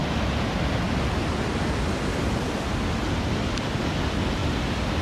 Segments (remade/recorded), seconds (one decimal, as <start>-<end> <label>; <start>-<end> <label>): 0.0-4.4 recorded; 4.4-5.0 remade